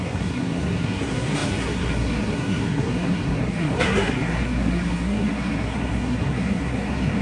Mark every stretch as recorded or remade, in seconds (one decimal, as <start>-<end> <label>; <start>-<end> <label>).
0.0-7.2 remade